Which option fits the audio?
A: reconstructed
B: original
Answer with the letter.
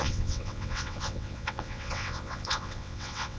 A